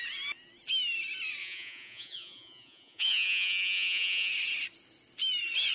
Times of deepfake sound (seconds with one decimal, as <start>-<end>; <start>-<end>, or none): 1.4-4.3